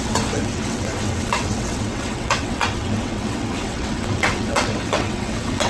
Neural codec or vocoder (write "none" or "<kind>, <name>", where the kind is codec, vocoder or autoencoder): vocoder, WaveNeXt